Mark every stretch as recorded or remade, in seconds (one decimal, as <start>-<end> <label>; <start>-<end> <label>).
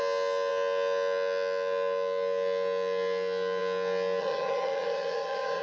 0.0-4.2 recorded; 4.2-5.6 remade